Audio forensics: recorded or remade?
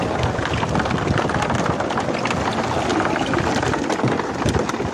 recorded